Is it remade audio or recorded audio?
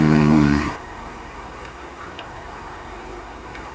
remade